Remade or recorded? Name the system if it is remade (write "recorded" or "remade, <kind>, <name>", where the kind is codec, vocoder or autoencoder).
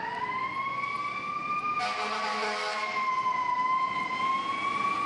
recorded